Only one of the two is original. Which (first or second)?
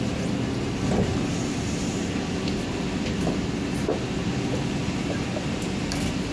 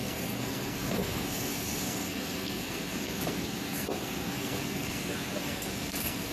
first